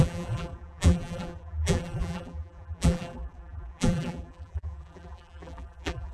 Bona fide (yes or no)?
no